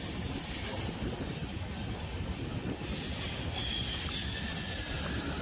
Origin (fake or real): real